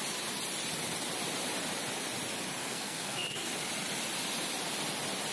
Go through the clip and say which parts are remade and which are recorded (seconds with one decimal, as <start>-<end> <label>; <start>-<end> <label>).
0.0-2.6 recorded; 2.6-3.5 remade; 3.5-5.3 recorded

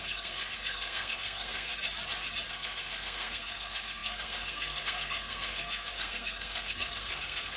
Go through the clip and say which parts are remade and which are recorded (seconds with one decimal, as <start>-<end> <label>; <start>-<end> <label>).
0.0-1.7 remade; 1.7-2.5 recorded; 2.5-7.6 remade

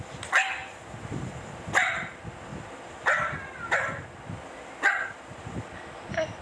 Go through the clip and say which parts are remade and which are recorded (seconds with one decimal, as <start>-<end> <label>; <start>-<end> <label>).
0.0-6.4 recorded

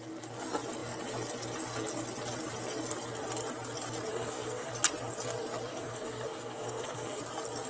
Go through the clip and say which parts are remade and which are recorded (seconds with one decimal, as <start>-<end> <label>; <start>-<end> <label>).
0.0-4.1 recorded; 4.1-4.7 remade; 4.7-5.7 recorded; 5.7-7.2 remade; 7.2-7.7 recorded

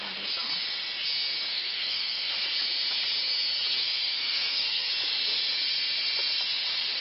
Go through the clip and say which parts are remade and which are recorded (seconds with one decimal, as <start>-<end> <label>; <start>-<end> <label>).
0.0-1.5 recorded; 1.5-2.3 remade; 2.3-3.8 recorded; 3.8-4.9 remade; 4.9-7.0 recorded

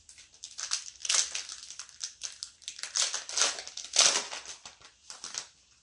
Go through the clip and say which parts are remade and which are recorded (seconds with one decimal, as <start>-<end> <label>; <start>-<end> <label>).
0.0-5.8 recorded

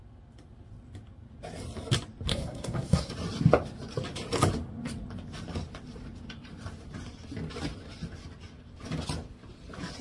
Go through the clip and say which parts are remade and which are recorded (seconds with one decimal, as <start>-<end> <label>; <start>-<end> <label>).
0.0-2.3 recorded; 2.3-3.1 remade; 3.1-10.0 recorded